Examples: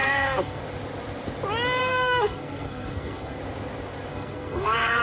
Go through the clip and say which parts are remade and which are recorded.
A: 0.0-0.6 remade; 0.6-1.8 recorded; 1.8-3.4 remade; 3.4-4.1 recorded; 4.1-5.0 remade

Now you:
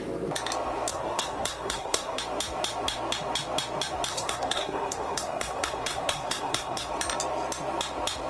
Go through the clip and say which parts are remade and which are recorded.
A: 0.0-0.9 recorded; 0.9-2.2 remade; 2.2-4.1 recorded; 4.1-6.9 remade; 6.9-8.3 recorded

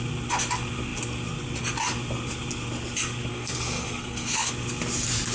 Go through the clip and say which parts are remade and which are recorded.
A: 0.0-3.3 recorded; 3.3-4.5 remade; 4.5-5.3 recorded

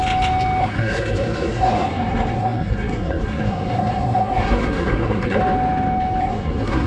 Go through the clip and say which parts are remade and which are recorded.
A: 0.0-0.6 recorded; 0.6-5.4 remade; 5.4-6.2 recorded; 6.2-6.9 remade

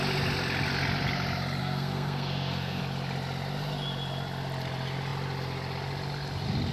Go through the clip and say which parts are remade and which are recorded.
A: 0.0-1.6 recorded; 1.6-2.8 remade; 2.8-6.7 recorded

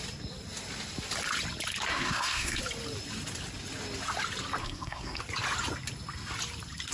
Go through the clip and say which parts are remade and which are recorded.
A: 0.0-1.9 recorded; 1.9-2.6 remade; 2.6-4.6 recorded; 4.6-5.2 remade; 5.2-6.9 recorded

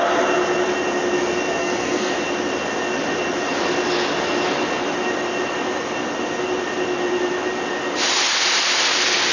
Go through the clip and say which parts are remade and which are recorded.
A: 0.0-1.6 recorded; 1.6-2.1 remade; 2.1-9.3 recorded